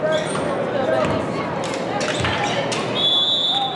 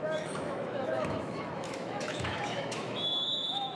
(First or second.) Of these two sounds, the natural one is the first